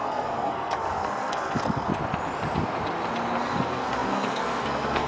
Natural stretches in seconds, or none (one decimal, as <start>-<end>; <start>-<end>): 1.9-3.4